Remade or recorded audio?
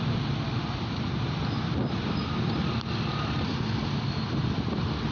recorded